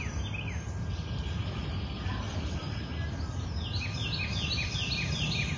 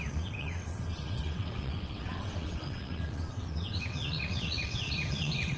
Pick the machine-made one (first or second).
second